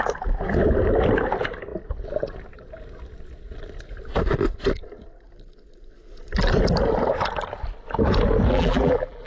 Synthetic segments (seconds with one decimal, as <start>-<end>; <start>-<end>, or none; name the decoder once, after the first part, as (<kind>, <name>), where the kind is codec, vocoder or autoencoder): 8.5-9.3 (vocoder, BigVGAN v2)

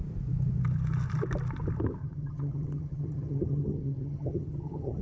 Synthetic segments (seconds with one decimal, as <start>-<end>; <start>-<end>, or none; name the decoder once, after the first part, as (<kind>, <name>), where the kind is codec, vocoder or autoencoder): 2.0-5.0 (vocoder, HiFi-GAN)

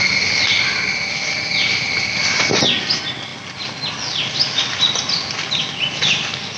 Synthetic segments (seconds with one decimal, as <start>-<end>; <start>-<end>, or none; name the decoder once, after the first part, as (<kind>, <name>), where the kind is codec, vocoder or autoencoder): none